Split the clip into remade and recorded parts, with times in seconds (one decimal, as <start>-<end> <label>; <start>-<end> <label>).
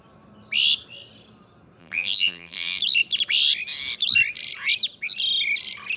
0.0-1.8 recorded; 1.8-2.8 remade; 2.8-6.0 recorded